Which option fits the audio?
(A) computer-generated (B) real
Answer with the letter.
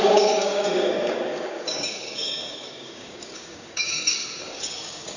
A